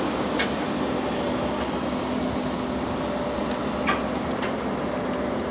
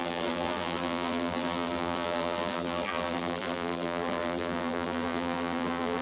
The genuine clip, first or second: first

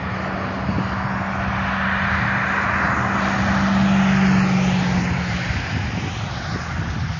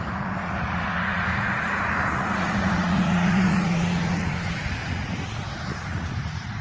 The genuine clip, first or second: first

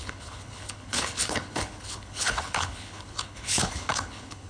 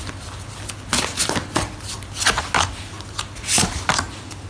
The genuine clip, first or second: second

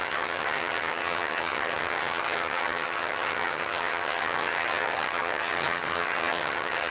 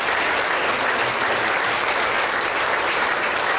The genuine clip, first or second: second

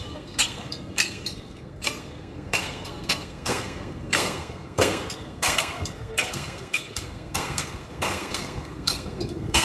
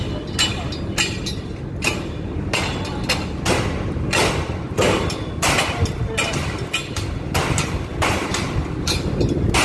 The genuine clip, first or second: second